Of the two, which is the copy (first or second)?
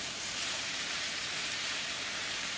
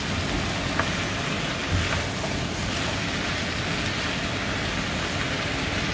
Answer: first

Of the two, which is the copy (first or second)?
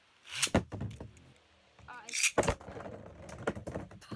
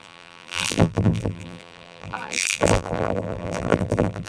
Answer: second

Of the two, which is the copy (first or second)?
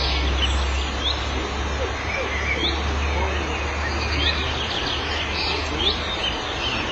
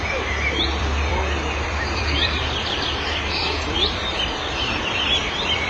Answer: second